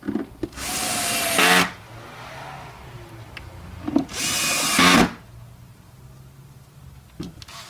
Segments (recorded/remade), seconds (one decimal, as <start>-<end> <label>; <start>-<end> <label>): 0.0-7.7 recorded